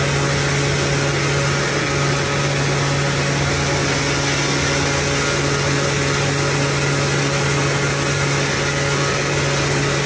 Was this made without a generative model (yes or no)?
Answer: yes